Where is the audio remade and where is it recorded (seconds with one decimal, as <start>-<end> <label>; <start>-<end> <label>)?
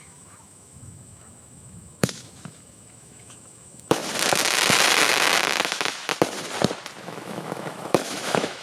0.0-4.0 remade; 4.0-5.6 recorded; 5.6-6.1 remade; 6.1-7.0 recorded; 7.0-8.6 remade